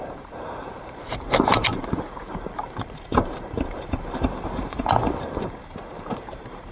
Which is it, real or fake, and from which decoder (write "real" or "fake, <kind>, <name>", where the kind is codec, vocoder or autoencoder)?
fake, vocoder, BigVGAN v2